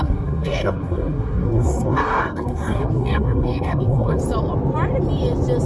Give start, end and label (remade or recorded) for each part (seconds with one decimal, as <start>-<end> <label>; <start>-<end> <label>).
0.0-4.2 remade; 4.2-5.7 recorded